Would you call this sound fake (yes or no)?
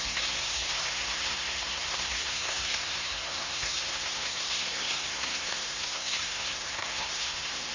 yes